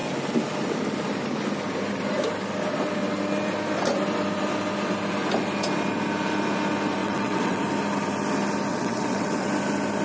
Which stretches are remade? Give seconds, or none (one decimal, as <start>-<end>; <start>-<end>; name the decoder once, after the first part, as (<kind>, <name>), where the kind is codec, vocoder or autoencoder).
7.0-7.6 (vocoder, WaveNeXt); 8.7-9.5